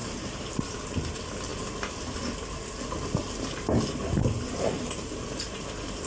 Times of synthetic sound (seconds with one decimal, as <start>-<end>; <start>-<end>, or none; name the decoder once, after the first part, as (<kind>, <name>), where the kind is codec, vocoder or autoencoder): 0.0-0.5 (vocoder, BigVGAN v2)